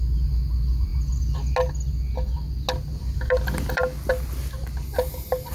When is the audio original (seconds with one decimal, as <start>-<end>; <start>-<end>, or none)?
0.0-5.5